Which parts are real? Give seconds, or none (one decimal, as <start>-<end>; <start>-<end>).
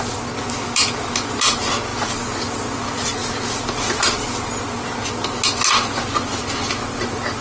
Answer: 0.0-7.4